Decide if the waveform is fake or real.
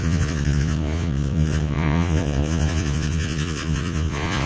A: fake